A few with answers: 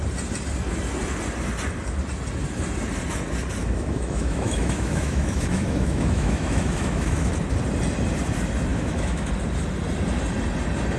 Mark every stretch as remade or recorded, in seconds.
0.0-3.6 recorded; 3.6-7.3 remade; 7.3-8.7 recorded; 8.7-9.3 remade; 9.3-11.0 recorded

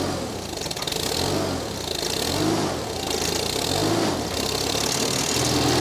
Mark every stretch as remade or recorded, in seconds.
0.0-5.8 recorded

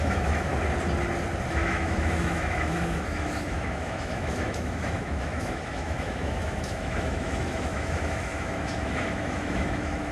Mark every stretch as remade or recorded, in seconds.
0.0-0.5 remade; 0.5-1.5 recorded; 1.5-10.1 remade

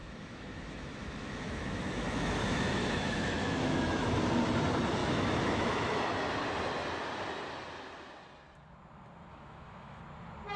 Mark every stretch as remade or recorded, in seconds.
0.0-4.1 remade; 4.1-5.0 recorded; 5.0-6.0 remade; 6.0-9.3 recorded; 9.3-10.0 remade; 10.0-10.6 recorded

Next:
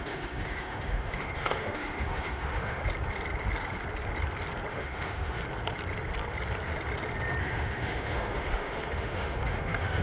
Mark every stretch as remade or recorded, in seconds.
0.0-2.8 remade; 2.8-4.7 recorded; 4.7-5.4 remade; 5.4-7.4 recorded; 7.4-10.0 remade

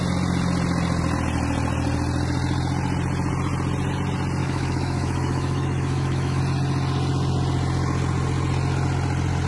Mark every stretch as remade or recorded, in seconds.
0.0-4.4 recorded; 4.4-6.4 remade; 6.4-9.5 recorded

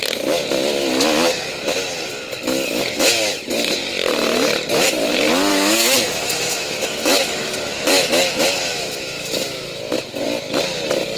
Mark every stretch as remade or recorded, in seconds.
0.0-5.5 recorded; 5.5-9.8 remade; 9.8-11.2 recorded

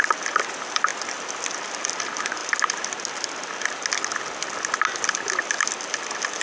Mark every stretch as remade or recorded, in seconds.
0.0-6.4 recorded